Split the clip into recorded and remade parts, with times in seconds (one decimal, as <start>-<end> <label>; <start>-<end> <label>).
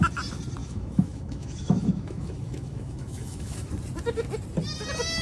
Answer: 0.0-0.6 recorded; 0.6-3.7 remade; 3.7-5.2 recorded